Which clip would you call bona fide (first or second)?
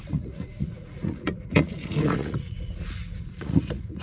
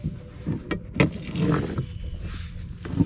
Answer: second